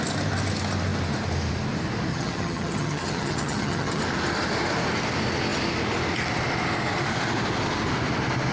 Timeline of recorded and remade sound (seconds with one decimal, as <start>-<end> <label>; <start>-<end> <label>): 0.0-2.1 recorded; 2.1-4.0 remade; 4.0-8.5 recorded